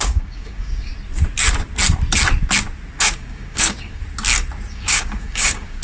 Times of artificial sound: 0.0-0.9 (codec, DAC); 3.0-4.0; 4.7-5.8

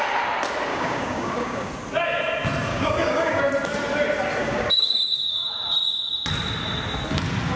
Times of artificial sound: 0.7-1.7 (codec, DAC); 2.7-3.4; 4.4-5.5

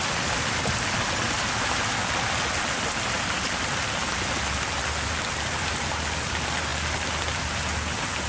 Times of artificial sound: none

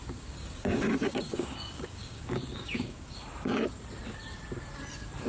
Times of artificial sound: 0.0-3.2 (codec, DAC)